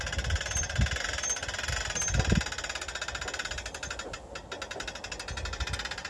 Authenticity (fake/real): real